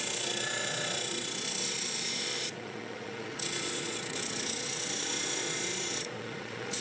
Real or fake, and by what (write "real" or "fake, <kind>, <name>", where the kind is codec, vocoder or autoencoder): fake, vocoder, Vocos